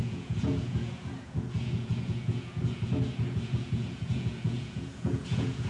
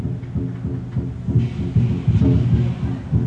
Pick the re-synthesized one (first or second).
first